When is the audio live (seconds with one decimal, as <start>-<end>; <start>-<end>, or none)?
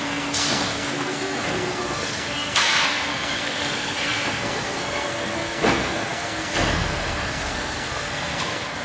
none